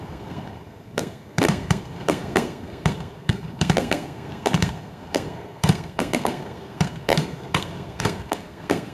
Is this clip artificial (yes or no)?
yes